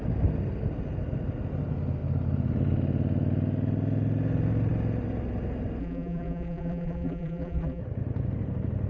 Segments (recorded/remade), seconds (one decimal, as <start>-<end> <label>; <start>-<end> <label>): 0.0-5.8 recorded; 5.8-7.8 remade; 7.8-8.9 recorded